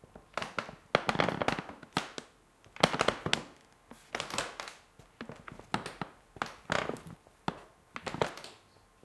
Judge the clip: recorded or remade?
recorded